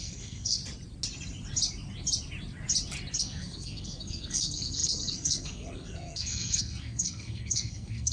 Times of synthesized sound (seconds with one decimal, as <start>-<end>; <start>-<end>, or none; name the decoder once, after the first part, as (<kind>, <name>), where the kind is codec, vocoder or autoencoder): 0.0-0.6 (codec, SNAC); 3.2-8.1